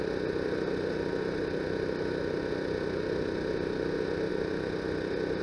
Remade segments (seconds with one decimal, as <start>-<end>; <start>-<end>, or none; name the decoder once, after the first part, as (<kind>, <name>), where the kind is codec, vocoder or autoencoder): none